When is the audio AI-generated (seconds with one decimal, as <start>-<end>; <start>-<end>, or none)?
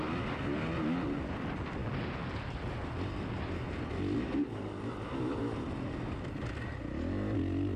none